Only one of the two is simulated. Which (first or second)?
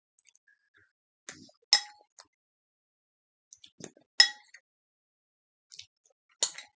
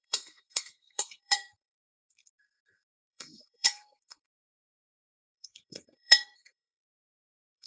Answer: second